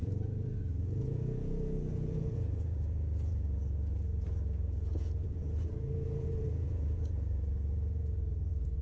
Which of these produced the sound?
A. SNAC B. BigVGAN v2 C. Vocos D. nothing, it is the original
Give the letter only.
C